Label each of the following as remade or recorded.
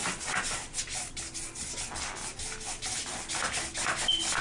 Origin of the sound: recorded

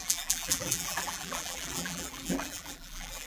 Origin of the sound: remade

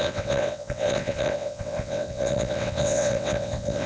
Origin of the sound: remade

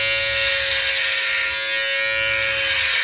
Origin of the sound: recorded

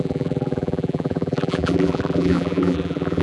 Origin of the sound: remade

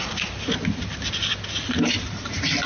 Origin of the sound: recorded